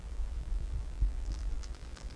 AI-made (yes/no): yes